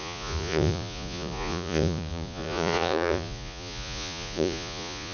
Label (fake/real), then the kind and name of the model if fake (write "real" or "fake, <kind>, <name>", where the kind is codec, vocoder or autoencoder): fake, vocoder, Vocos